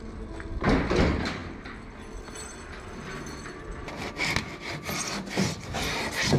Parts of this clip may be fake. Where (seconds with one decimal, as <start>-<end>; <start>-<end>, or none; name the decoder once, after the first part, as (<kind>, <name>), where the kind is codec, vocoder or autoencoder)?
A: none